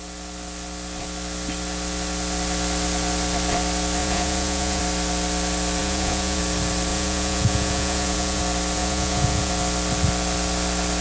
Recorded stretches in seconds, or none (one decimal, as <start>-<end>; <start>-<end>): 0.0-4.0; 4.8-5.8; 6.4-6.9; 8.4-8.8; 9.5-11.0